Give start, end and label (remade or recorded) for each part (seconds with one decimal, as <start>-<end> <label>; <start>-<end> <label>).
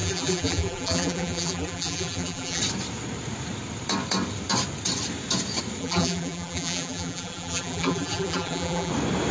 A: 0.0-2.6 remade; 2.6-5.8 recorded; 5.8-8.9 remade; 8.9-9.3 recorded